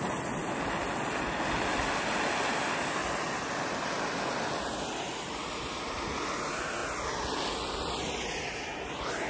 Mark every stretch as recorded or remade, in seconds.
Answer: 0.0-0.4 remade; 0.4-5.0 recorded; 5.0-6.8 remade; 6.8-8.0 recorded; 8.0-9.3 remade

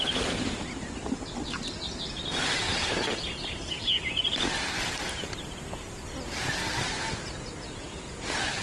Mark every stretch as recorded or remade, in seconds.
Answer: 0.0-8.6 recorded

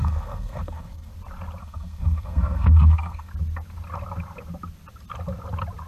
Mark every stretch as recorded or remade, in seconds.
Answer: 0.0-1.1 remade; 1.1-1.6 recorded; 1.6-3.3 remade; 3.3-5.9 recorded

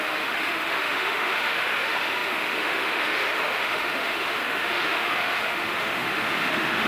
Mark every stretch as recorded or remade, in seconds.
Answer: 0.0-6.9 remade

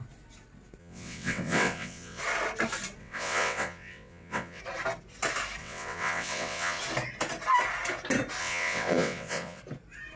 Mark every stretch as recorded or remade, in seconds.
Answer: 0.0-0.8 recorded; 0.8-2.2 remade; 2.2-3.0 recorded; 3.0-4.6 remade; 4.6-5.6 recorded; 5.6-6.8 remade; 6.8-8.4 recorded; 8.4-9.6 remade; 9.6-10.2 recorded

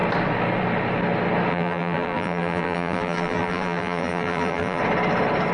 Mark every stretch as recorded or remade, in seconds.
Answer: 0.0-1.5 recorded; 1.5-4.8 remade; 4.8-5.5 recorded